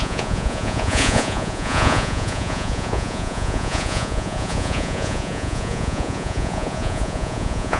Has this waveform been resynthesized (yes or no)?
yes